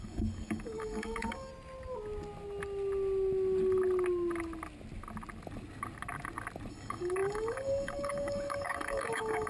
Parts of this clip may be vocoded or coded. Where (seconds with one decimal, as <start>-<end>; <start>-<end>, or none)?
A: 0.0-1.5; 6.7-9.5